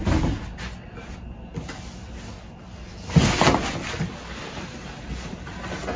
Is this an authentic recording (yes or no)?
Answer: yes